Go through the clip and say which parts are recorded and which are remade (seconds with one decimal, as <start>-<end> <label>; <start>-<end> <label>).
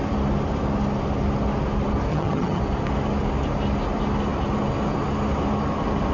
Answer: 0.0-2.1 recorded; 2.1-2.6 remade; 2.6-6.1 recorded